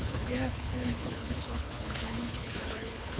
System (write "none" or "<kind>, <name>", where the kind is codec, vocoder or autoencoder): codec, HILCodec